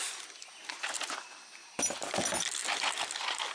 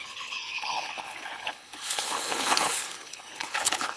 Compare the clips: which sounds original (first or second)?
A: first